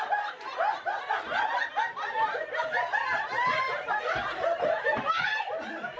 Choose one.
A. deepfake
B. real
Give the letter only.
B